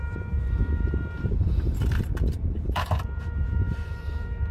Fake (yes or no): yes